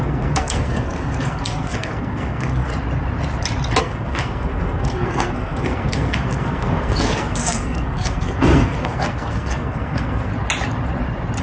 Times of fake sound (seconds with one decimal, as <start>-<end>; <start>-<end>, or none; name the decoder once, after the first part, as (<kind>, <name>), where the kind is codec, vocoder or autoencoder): 0.0-2.7 (codec, SNAC); 3.8-10.3